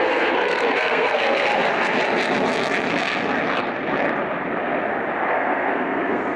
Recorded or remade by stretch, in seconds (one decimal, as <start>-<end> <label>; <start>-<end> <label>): 0.0-1.5 remade; 1.5-5.3 recorded; 5.3-6.4 remade